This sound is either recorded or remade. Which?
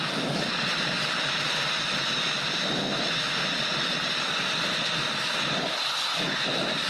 recorded